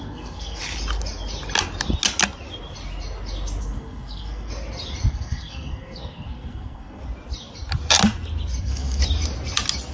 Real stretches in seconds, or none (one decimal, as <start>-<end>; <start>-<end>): 0.6-3.6; 4.5-5.1; 7.0-8.6; 9.0-9.9